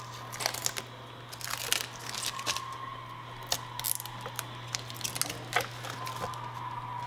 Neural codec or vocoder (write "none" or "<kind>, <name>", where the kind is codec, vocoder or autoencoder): none